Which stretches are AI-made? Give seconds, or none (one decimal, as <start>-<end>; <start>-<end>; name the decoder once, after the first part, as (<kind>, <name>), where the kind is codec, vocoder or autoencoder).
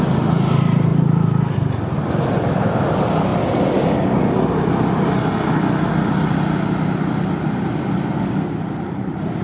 none